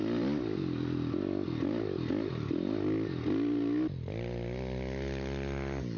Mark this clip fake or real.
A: real